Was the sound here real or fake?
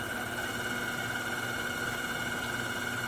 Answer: real